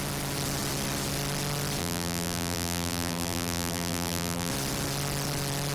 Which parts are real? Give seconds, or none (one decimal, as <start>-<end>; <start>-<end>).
0.0-1.8; 4.5-5.7